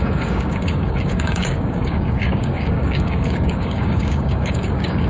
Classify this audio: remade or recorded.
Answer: remade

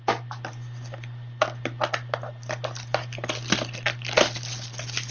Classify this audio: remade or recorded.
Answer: recorded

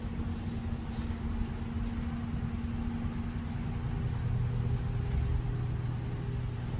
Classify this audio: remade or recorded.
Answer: recorded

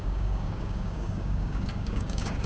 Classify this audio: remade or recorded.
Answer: remade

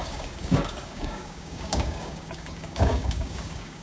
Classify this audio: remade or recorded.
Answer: remade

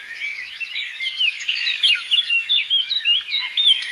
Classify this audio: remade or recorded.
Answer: remade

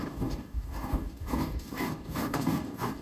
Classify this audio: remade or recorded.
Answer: remade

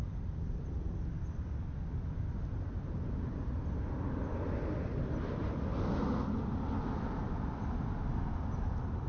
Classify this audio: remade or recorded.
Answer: recorded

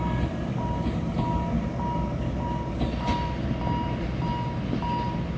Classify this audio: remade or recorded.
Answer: recorded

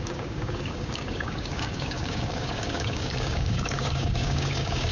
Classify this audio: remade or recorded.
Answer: remade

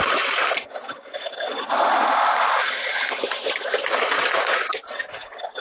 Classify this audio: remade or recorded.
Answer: recorded